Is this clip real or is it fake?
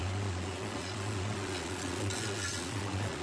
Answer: fake